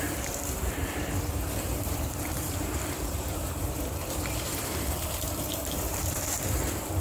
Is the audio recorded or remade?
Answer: remade